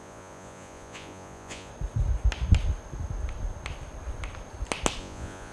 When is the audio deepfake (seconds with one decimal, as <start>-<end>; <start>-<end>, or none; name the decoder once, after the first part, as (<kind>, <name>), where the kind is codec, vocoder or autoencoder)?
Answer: 0.0-1.7 (vocoder, Vocos); 5.0-5.5